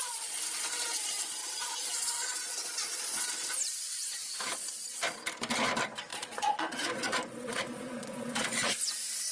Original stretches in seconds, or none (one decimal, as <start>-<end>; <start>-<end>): 0.0-1.4; 3.3-6.1; 8.8-9.3